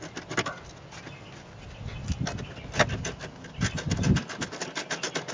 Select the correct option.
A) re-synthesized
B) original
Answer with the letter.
B